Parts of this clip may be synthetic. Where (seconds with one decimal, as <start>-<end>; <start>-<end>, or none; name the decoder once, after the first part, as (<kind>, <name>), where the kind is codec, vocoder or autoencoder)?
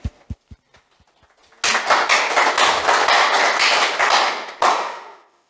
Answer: 4.7-5.5 (autoencoder, DAC-VAE)